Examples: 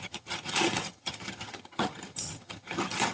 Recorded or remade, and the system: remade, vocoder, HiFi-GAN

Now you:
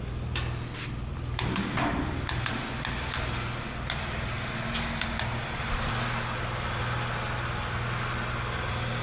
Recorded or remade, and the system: recorded